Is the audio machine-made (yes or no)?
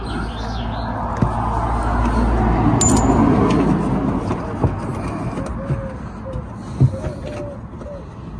no